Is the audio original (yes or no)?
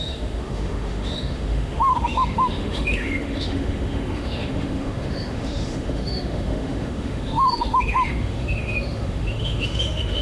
no